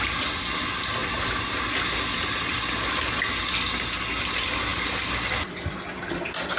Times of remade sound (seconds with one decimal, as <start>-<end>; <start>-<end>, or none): none